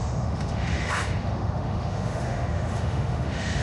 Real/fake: fake